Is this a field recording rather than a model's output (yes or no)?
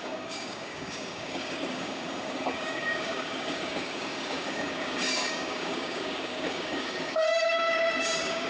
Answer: no